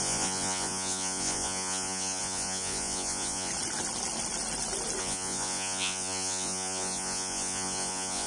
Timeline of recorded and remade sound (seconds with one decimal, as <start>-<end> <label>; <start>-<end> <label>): 0.0-3.5 remade; 3.5-5.0 recorded; 5.0-8.3 remade